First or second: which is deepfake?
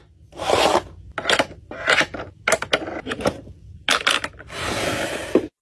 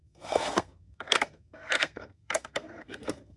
second